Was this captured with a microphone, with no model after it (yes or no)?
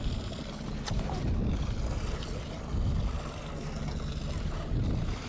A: yes